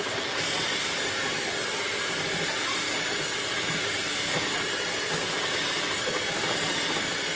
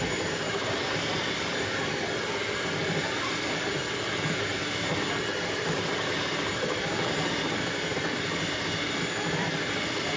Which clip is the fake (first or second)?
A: second